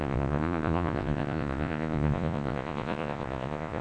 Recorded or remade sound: remade